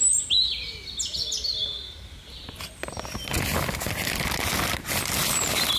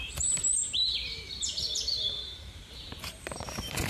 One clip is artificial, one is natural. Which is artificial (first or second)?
second